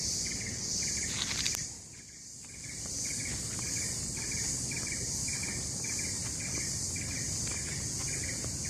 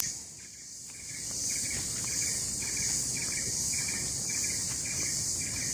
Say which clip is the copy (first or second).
first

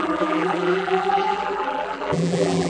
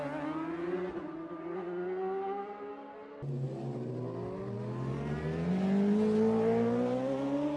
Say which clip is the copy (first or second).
first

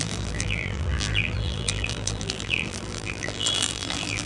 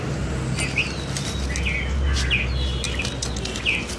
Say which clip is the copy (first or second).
first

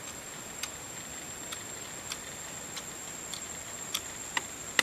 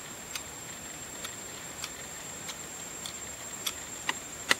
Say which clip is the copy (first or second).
second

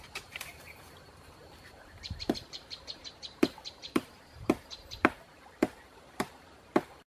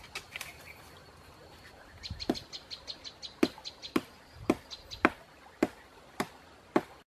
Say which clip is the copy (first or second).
first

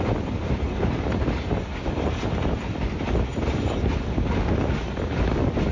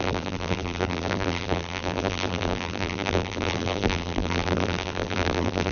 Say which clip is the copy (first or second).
second